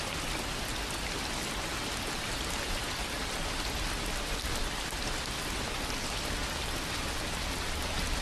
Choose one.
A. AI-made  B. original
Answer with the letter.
B